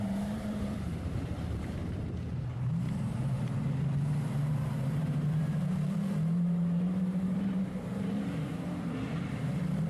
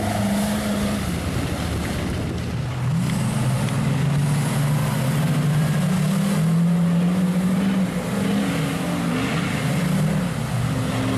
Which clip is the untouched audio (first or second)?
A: second